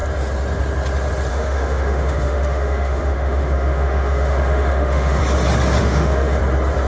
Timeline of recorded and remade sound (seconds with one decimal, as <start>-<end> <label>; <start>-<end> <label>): 0.0-1.3 recorded; 1.3-5.2 remade; 5.2-5.8 recorded; 5.8-6.4 remade; 6.4-6.9 recorded